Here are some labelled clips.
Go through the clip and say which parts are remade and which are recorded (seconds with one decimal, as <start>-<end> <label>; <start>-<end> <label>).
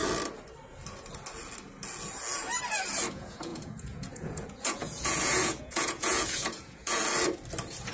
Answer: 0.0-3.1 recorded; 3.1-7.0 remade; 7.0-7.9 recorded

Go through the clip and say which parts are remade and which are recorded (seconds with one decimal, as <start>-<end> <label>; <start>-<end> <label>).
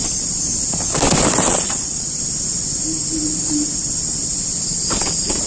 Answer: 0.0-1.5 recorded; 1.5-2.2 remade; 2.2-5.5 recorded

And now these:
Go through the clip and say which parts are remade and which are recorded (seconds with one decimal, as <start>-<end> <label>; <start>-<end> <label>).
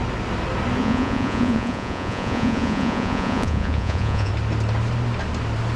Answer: 0.0-0.8 recorded; 0.8-4.3 remade; 4.3-5.8 recorded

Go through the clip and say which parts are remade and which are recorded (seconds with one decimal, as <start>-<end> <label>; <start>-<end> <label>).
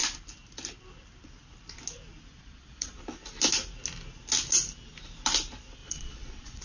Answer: 0.0-2.3 recorded; 2.3-3.0 remade; 3.0-5.8 recorded; 5.8-6.6 remade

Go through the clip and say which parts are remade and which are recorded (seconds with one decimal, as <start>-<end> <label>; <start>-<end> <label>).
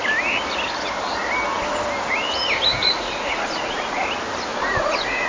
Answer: 0.0-2.7 recorded; 2.7-4.0 remade; 4.0-4.5 recorded; 4.5-5.3 remade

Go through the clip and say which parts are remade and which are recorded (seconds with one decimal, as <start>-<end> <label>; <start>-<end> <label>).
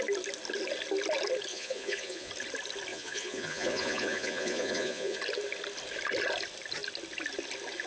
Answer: 0.0-1.5 recorded; 1.5-2.3 remade; 2.3-2.9 recorded; 2.9-5.2 remade; 5.2-7.9 recorded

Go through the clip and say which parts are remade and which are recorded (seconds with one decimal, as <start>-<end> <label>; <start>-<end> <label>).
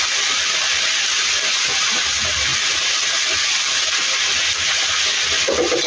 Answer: 0.0-5.9 recorded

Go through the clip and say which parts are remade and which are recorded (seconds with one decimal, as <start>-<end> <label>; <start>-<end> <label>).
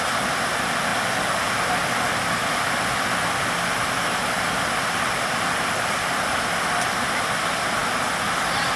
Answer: 0.0-8.8 recorded